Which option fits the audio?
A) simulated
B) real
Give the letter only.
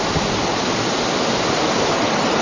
B